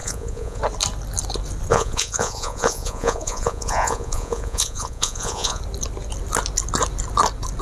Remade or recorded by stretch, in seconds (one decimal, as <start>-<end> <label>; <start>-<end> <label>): 0.0-0.6 remade; 0.6-1.7 recorded; 1.7-5.6 remade; 5.6-7.6 recorded